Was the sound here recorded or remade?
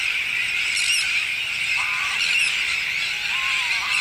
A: recorded